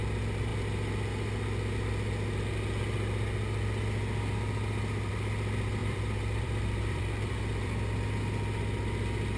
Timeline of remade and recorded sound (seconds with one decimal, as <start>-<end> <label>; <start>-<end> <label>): 0.0-5.8 recorded; 5.8-8.0 remade; 8.0-9.4 recorded